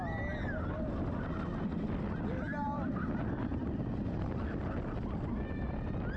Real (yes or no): yes